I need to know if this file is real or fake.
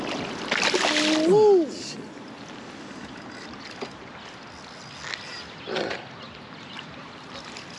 real